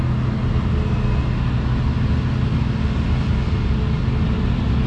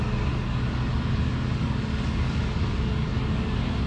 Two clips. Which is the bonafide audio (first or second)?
first